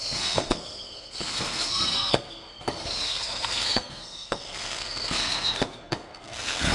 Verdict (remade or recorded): remade